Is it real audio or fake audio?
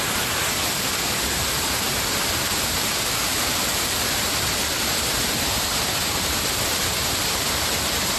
fake